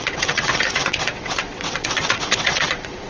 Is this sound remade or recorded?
remade